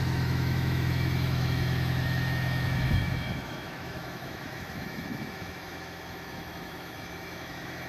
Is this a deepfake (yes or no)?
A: yes